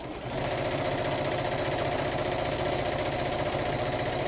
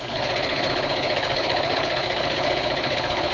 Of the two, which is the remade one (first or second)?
second